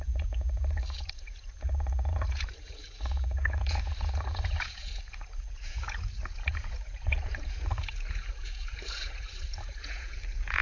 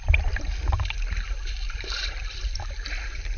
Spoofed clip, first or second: first